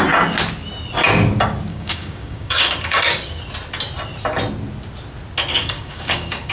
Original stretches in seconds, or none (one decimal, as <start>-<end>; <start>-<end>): 0.0-1.7; 3.4-5.5